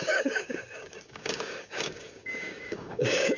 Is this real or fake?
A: fake